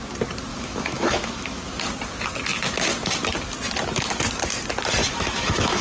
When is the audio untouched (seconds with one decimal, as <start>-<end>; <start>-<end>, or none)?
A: 0.0-0.5; 1.6-5.0